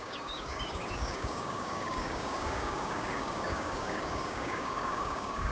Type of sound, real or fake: fake